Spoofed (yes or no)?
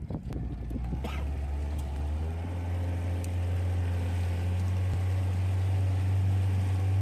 no